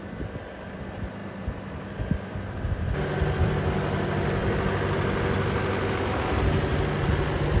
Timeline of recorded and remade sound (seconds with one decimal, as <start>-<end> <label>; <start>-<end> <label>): 0.0-7.6 recorded